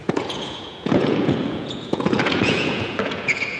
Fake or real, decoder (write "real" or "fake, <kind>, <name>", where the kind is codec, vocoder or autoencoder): fake, vocoder, Vocos